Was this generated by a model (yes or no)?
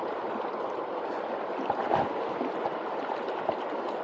no